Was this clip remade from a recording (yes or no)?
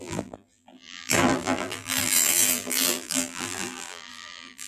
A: yes